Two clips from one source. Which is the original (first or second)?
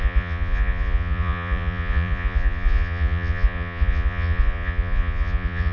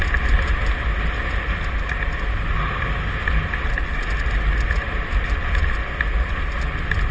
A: second